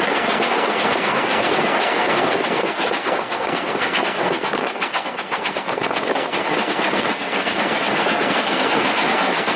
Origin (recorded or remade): remade